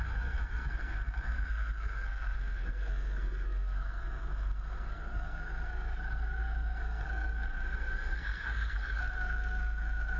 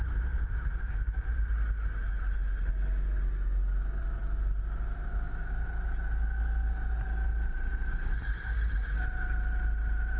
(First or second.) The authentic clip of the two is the second